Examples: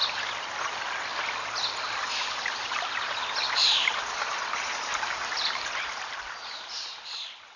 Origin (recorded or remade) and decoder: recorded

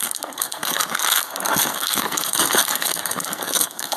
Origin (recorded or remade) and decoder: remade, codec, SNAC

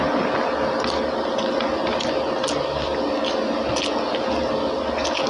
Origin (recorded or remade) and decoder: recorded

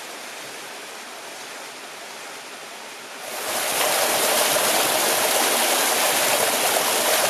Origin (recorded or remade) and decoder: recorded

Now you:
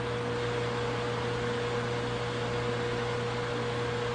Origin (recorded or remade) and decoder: recorded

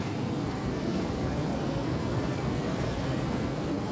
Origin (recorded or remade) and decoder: remade, codec, SNAC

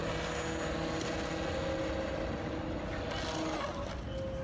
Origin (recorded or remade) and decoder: recorded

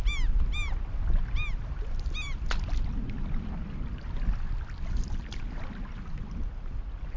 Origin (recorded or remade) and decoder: recorded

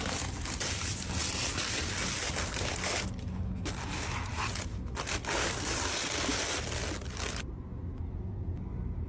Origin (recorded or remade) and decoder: recorded